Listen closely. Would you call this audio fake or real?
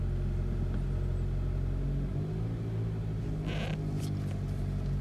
real